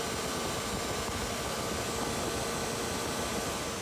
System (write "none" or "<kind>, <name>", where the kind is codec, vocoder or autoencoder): none